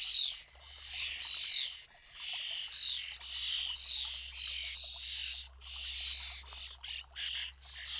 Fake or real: real